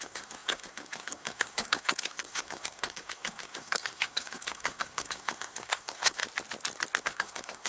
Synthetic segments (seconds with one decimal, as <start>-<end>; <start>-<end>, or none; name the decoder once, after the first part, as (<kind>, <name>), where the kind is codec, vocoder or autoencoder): 0.0-6.2 (codec, SNAC); 7.0-7.7